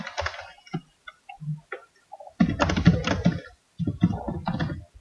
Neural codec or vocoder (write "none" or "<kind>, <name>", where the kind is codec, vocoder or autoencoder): none